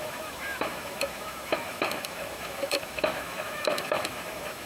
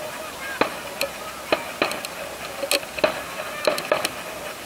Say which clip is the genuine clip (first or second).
second